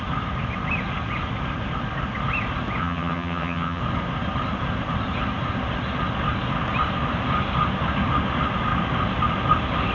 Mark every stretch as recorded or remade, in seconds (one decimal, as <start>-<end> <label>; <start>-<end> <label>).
0.0-2.8 recorded; 2.8-3.8 remade; 3.8-9.9 recorded